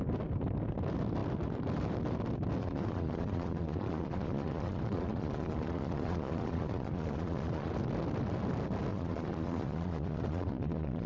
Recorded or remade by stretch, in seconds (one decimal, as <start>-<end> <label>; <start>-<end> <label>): 0.0-2.6 recorded; 2.6-7.7 remade; 7.7-8.9 recorded; 8.9-11.1 remade